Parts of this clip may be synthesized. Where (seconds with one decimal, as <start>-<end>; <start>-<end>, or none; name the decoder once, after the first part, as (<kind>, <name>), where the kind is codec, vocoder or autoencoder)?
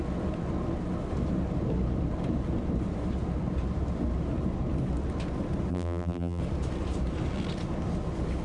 5.7-6.4 (vocoder, BigVGAN v2)